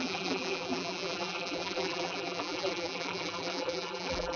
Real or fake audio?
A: fake